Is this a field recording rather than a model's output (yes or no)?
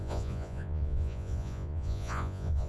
no